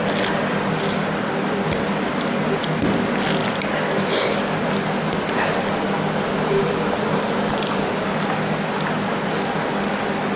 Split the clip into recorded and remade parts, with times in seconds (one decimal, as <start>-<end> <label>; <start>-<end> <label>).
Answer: 0.0-10.4 recorded